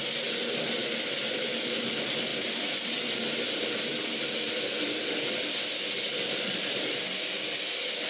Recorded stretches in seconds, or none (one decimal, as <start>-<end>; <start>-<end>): 0.0-0.8; 1.7-2.3; 6.7-8.1